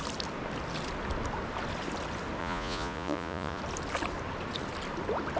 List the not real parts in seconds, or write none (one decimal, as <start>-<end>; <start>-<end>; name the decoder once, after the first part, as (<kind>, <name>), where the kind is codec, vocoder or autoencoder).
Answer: 2.4-3.6 (vocoder, Vocos)